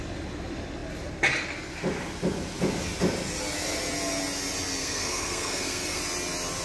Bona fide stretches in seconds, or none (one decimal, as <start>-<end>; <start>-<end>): 0.0-4.8; 6.0-6.6